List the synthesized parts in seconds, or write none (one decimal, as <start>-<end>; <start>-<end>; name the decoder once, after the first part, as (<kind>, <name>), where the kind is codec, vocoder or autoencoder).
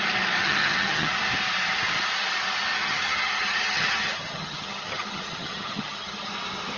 0.4-1.1 (vocoder, HiFi-GAN); 2.7-6.3